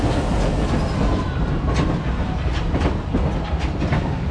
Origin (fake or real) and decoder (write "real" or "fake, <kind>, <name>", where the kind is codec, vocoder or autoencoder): real